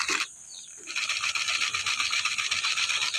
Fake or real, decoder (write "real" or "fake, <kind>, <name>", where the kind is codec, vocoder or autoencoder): fake, vocoder, BigVGAN v2